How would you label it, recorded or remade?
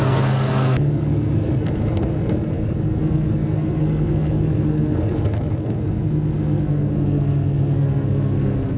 remade